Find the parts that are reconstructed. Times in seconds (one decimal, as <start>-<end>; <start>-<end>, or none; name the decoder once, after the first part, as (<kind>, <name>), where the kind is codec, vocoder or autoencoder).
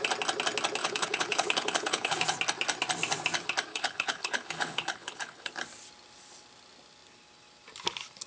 0.8-2.2 (codec, HILCodec); 3.7-5.5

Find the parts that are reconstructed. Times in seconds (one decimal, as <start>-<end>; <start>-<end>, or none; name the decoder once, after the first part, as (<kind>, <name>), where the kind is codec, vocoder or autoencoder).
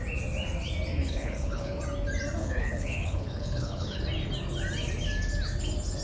1.0-1.8 (codec, HILCodec); 2.4-4.0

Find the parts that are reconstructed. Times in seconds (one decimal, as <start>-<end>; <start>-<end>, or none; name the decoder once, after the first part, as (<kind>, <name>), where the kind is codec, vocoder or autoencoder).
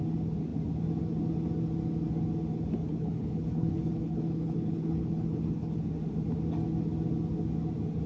2.8-5.9 (codec, HILCodec)